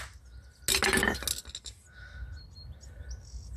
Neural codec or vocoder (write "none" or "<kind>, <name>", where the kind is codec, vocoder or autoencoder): none